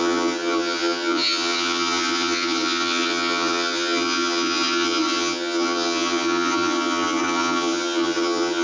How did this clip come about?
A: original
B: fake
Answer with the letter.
B